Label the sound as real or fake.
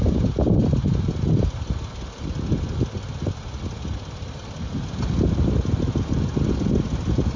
real